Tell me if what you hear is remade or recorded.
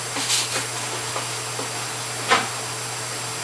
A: recorded